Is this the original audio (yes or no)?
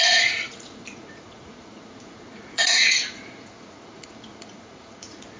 no